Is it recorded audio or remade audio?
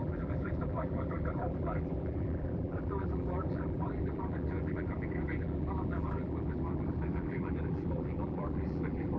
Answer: remade